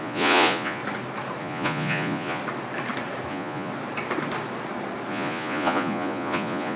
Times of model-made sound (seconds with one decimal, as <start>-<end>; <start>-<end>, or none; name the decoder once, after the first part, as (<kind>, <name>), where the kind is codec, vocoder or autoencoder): 0.0-0.8 (vocoder, Vocos); 1.4-2.4; 3.3-3.7; 5.1-6.8

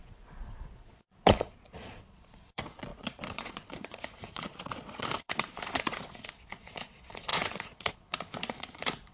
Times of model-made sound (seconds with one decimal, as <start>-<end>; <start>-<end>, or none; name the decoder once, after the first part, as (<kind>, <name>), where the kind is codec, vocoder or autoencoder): 0.0-9.1 (vocoder, Vocos)